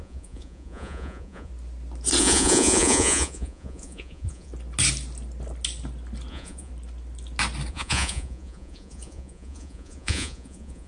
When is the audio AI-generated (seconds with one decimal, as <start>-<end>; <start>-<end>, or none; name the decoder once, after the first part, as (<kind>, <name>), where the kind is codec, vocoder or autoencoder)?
0.0-1.5 (vocoder, Vocos); 2.2-4.5; 6.3-6.7; 7.7-10.9